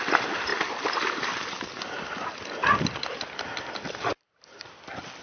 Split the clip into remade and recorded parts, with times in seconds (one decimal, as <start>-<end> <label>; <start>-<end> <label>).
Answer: 0.0-0.5 recorded; 0.5-2.9 remade; 2.9-5.2 recorded